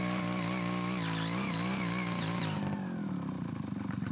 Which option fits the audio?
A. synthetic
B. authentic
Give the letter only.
B